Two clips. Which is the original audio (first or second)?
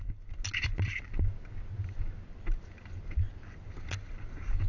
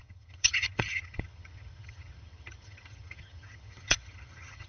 first